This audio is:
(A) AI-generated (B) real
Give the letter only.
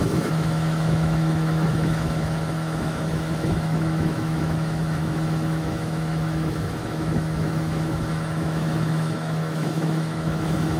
A